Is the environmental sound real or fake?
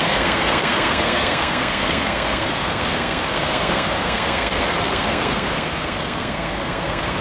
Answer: fake